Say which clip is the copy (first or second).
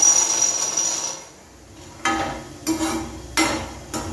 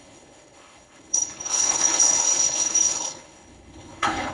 second